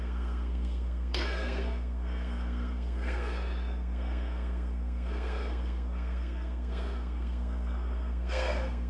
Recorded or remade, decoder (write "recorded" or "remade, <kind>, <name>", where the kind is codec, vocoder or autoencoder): remade, codec, SNAC